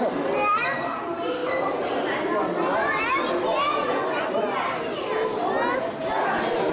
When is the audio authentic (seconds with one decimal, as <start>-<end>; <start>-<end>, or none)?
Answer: 0.0-6.1